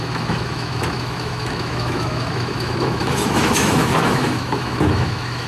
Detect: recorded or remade remade